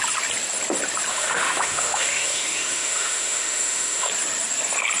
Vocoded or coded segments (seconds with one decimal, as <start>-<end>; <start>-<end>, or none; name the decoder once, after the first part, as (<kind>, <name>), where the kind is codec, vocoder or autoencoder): 1.1-4.1 (autoencoder, DAC-VAE)

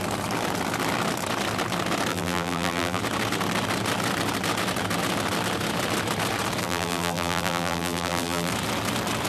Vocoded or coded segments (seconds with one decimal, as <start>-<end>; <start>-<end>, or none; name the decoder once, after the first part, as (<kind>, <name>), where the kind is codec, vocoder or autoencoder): 2.1-3.0 (vocoder, BigVGAN v2); 6.6-8.5

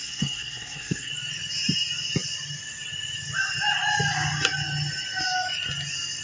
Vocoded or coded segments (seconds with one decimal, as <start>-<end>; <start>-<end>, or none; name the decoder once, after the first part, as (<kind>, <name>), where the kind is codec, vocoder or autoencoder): 0.0-1.1 (codec, SNAC)

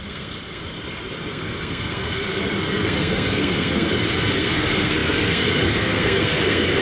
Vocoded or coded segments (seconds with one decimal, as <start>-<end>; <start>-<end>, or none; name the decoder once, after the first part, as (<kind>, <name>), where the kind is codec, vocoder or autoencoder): 0.0-0.6 (codec, SNAC); 1.3-3.9; 4.4-6.8

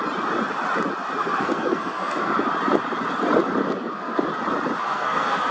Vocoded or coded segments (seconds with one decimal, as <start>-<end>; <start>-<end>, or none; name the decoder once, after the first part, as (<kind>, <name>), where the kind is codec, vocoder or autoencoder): 1.2-2.3 (codec, SNAC); 3.6-4.2; 4.8-5.5

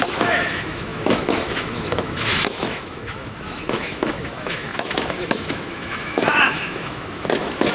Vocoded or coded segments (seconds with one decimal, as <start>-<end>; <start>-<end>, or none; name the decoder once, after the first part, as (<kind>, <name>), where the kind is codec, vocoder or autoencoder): 0.0-7.7 (autoencoder, DAC-VAE)